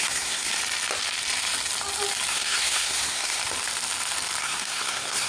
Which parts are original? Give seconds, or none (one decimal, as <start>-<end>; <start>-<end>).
0.6-2.3; 3.4-4.4